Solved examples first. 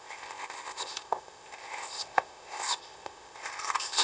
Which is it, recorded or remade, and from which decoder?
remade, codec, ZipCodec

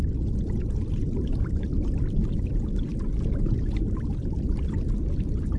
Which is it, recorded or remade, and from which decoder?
recorded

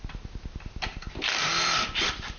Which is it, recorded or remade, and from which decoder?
recorded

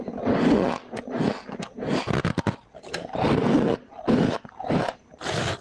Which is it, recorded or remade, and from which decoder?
recorded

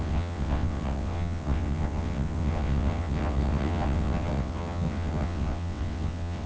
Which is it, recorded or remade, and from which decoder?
remade, vocoder, WaveNeXt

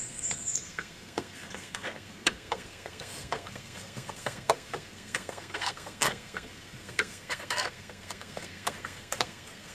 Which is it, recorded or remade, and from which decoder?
remade, codec, SNAC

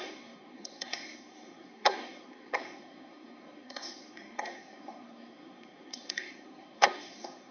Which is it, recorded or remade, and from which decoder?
remade, codec, SNAC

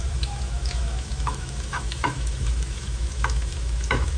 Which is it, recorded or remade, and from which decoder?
remade, autoencoder, DAC-VAE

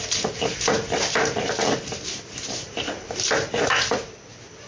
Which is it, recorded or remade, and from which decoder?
recorded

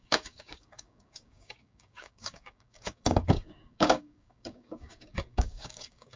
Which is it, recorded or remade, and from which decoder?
remade, codec, DAC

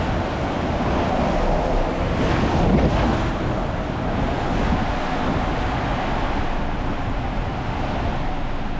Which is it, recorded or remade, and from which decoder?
recorded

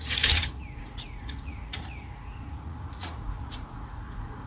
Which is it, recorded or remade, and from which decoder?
remade, vocoder, Vocos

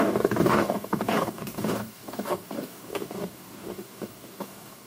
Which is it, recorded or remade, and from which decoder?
remade, codec, DAC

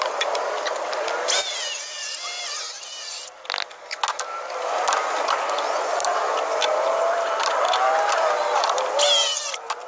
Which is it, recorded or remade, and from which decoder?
recorded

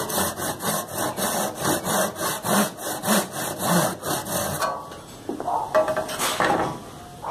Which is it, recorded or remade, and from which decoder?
recorded